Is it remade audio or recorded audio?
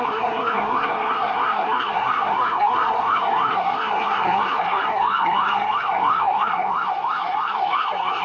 remade